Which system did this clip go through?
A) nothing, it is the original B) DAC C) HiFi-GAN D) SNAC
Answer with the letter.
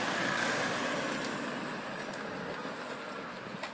A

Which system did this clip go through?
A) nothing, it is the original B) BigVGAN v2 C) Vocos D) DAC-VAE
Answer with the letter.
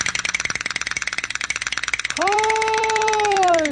B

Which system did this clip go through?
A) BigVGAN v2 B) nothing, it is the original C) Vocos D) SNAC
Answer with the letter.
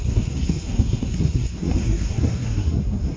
D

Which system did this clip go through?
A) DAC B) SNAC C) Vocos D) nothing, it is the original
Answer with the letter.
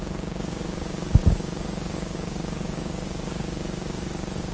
A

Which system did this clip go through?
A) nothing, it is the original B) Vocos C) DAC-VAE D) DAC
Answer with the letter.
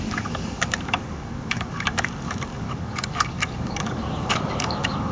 D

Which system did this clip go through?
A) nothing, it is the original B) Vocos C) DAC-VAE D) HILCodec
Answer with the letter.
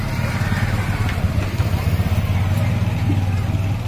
A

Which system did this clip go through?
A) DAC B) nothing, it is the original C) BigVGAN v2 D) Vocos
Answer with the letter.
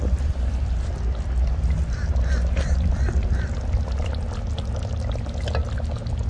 B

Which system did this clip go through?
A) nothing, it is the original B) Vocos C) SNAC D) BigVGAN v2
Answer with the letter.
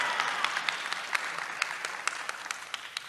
A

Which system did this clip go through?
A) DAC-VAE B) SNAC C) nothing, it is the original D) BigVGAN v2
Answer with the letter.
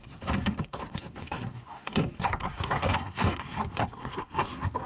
B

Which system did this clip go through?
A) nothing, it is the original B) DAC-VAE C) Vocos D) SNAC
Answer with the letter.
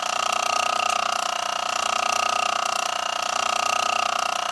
A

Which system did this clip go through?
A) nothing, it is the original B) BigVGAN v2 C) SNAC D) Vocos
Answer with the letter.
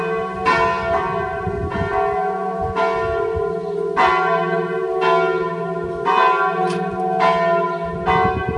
A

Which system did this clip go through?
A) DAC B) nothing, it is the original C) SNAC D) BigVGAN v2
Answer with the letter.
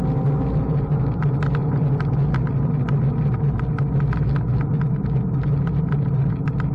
B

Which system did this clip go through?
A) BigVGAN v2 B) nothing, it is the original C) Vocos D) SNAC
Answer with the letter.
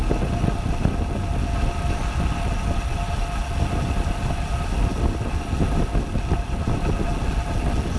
B